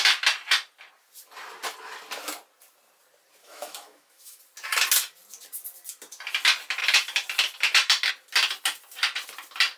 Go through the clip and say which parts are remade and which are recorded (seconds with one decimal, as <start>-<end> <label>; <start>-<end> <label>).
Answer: 0.0-3.4 recorded; 3.4-4.4 remade; 4.4-9.8 recorded